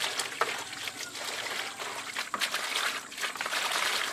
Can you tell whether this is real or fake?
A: real